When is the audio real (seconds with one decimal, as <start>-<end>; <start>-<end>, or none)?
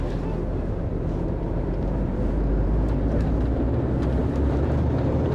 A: 0.0-0.5; 3.7-4.2